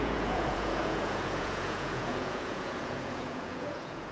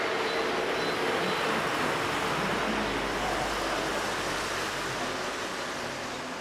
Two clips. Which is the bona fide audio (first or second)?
second